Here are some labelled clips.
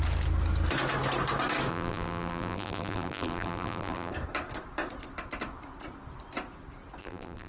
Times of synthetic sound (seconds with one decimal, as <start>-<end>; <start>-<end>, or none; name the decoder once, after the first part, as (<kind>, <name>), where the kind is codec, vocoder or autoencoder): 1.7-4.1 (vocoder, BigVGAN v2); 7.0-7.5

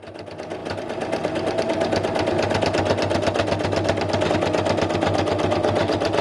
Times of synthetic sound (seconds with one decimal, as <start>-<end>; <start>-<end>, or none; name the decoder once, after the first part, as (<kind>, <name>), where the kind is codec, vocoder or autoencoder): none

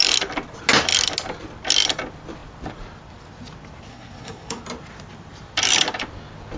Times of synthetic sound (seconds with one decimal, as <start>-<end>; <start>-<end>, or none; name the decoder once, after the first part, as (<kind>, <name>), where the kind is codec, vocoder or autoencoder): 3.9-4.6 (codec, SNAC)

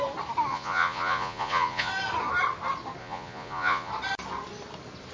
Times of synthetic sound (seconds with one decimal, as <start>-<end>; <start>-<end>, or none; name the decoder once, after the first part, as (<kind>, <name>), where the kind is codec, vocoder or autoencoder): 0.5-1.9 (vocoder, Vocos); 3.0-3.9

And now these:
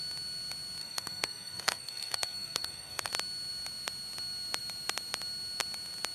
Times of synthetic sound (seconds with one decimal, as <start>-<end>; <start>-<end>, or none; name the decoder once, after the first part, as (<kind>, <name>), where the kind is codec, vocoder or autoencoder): 0.8-3.1 (codec, SNAC)